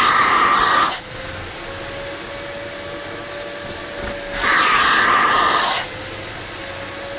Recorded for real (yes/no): yes